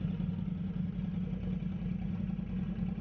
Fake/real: real